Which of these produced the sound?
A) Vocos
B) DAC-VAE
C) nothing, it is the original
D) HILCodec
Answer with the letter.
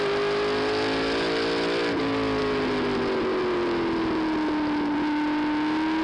C